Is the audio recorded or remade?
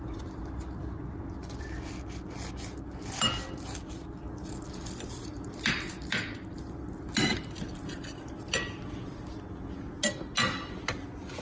recorded